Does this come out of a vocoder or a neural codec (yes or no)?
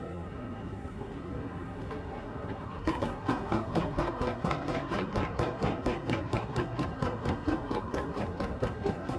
yes